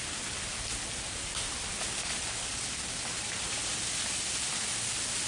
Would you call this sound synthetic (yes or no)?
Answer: no